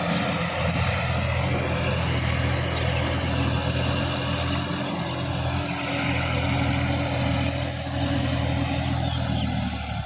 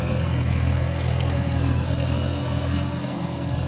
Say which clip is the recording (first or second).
first